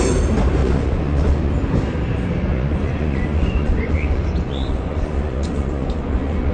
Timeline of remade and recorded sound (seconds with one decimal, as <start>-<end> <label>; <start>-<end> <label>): 0.0-0.6 recorded; 0.6-1.5 remade; 1.5-2.5 recorded; 2.5-6.5 remade